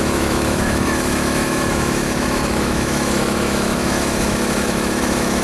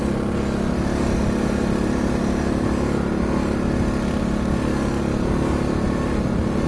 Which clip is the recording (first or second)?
second